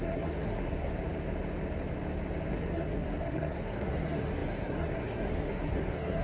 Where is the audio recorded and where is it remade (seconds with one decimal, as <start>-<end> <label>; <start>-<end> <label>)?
0.0-0.9 remade; 0.9-2.5 recorded; 2.5-6.2 remade